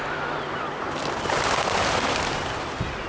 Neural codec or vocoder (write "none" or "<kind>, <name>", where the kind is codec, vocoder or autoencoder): none